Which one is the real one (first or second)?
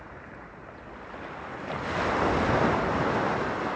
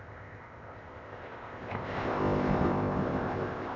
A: first